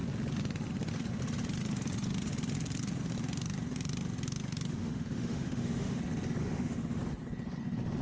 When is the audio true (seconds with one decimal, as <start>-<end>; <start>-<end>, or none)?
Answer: 0.0-4.8; 6.0-6.4; 7.0-8.0